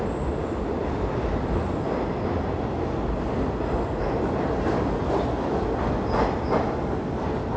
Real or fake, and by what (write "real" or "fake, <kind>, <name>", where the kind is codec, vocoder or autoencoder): real